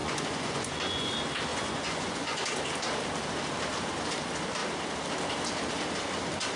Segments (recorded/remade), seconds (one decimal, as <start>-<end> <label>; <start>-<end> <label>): 0.0-1.1 remade; 1.1-1.5 recorded; 1.5-2.4 remade; 2.4-6.6 recorded